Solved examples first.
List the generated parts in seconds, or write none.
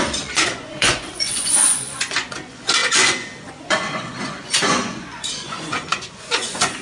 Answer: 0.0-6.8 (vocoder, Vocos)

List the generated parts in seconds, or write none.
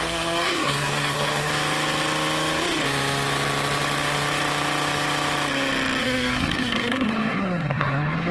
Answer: 0.0-1.5 (codec, SNAC); 6.0-8.3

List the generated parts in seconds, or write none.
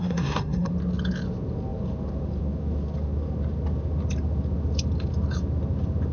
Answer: 0.0-0.7 (codec, SNAC)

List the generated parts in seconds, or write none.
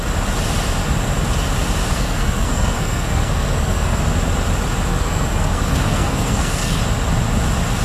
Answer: 1.9-4.0 (codec, SNAC); 4.9-6.8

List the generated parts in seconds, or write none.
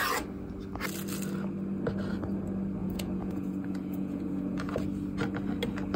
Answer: 2.8-4.7 (vocoder, Vocos)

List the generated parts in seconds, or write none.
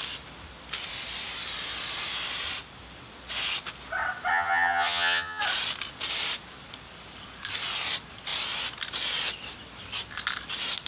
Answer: 4.3-5.4 (vocoder, HiFi-GAN)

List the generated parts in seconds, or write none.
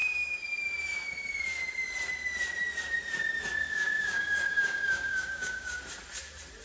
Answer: 0.0-0.6 (codec, DAC); 3.6-5.8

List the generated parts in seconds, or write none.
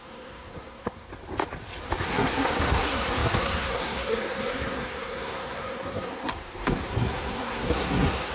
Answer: 0.0-1.1 (codec, SNAC); 2.0-8.3